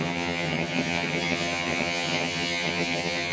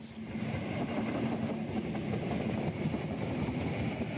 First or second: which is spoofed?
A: first